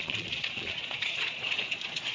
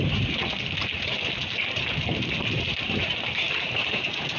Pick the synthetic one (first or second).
first